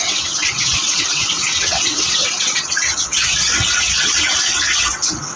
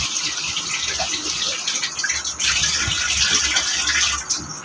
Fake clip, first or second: first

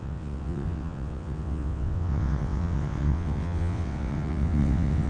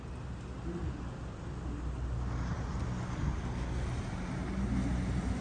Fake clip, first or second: first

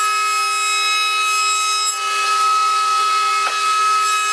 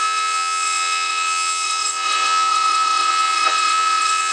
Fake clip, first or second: second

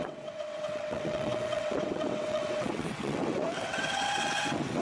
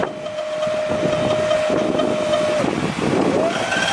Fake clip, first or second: first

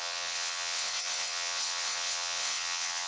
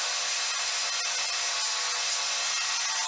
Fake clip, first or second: first